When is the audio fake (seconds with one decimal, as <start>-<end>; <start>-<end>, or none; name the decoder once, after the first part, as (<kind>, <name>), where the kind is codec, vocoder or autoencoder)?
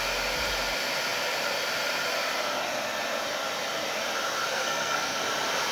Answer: 4.5-5.2 (codec, SNAC)